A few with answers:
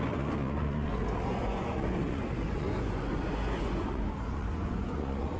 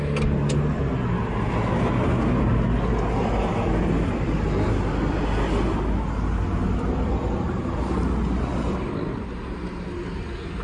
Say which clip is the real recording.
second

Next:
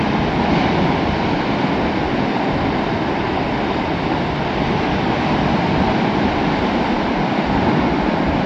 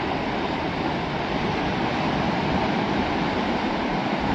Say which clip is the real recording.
first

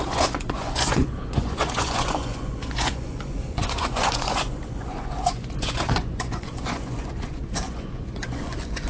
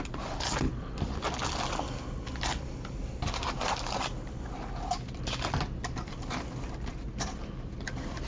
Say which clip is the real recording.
second